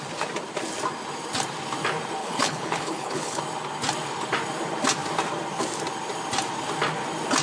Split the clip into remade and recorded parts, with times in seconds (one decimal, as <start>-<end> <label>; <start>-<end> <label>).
0.0-2.2 recorded; 2.2-3.4 remade; 3.4-7.4 recorded